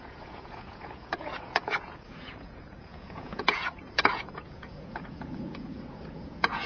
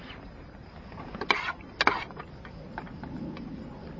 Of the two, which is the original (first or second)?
second